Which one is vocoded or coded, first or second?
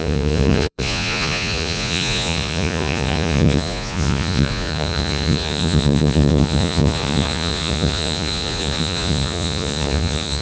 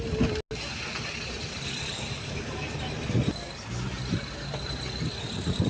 first